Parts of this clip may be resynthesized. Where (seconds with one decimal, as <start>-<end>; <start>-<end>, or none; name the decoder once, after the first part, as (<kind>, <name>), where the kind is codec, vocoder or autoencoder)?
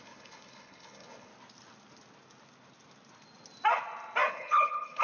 0.0-1.3 (codec, HILCodec); 4.3-5.0